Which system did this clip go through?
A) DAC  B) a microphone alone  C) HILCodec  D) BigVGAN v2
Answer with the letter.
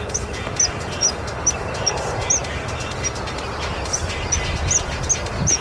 B